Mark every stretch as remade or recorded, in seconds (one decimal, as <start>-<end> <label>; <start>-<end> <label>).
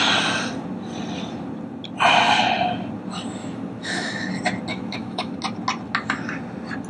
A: 0.0-3.4 recorded; 3.4-4.3 remade; 4.3-4.7 recorded; 4.7-5.3 remade; 5.3-6.9 recorded